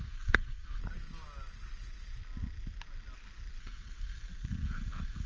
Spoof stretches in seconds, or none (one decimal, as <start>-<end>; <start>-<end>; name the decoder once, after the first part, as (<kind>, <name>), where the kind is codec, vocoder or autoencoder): 0.0-0.8 (codec, SNAC); 3.6-5.3